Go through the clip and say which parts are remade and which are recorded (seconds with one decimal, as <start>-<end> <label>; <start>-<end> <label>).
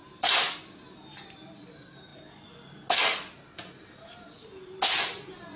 0.0-5.6 recorded